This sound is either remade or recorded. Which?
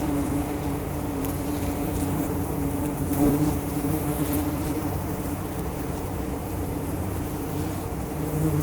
remade